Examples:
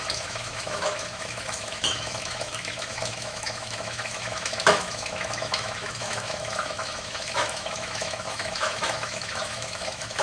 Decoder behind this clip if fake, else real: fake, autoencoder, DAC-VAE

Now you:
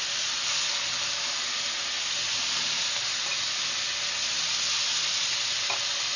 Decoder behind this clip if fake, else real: real